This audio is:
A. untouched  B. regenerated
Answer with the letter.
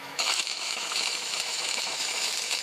B